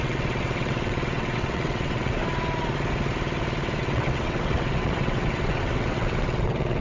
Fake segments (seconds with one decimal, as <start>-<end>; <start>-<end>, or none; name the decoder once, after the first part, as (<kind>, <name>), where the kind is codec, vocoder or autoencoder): 0.0-2.2 (vocoder, WaveNeXt); 3.8-6.8